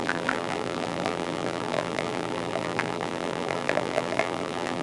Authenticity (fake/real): fake